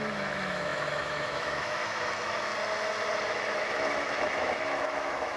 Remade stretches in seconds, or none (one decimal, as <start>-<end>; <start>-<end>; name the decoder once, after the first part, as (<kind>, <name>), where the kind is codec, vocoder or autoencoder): 0.0-2.5 (autoencoder, DAC-VAE); 3.3-5.4